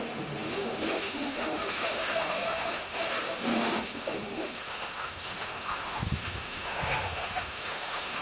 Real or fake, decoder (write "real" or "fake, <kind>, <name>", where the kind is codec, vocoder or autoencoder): fake, autoencoder, DAC-VAE